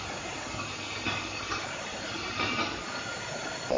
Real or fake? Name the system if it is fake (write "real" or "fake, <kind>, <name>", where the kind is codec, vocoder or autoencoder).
real